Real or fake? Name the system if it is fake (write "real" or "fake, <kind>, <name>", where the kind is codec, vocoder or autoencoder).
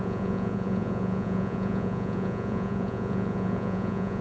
fake, vocoder, Vocos